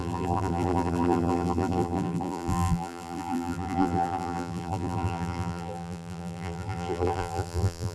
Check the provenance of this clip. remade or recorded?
remade